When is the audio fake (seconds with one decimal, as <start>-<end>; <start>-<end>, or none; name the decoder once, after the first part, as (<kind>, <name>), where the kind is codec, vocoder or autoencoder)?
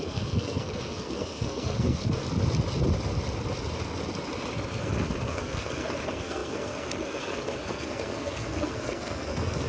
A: 0.0-2.2 (codec, SNAC); 4.8-9.7